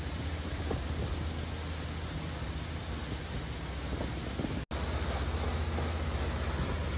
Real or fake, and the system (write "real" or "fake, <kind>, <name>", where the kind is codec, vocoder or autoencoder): real